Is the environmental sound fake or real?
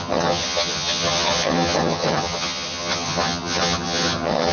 fake